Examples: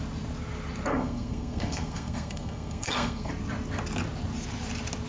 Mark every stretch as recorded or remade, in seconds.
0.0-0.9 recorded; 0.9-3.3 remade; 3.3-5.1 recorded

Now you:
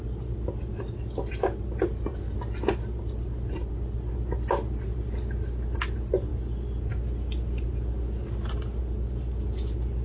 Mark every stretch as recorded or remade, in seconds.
0.0-10.0 recorded

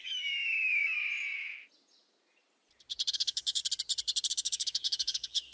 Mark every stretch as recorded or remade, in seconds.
0.0-1.0 remade; 1.0-3.1 recorded; 3.1-3.6 remade; 3.6-4.3 recorded; 4.3-5.5 remade

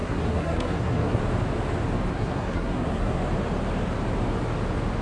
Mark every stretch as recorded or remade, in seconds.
0.0-1.2 remade; 1.2-2.1 recorded; 2.1-3.2 remade; 3.2-5.0 recorded

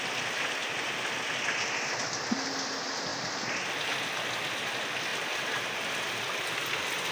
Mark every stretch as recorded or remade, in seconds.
0.0-7.1 recorded

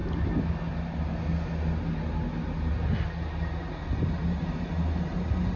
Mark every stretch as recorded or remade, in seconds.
0.0-5.6 recorded

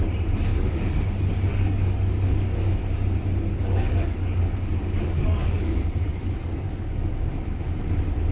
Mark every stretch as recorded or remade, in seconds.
0.0-0.5 recorded; 0.5-1.0 remade; 1.0-1.5 recorded; 1.5-2.8 remade; 2.8-3.5 recorded; 3.5-7.1 remade; 7.1-8.3 recorded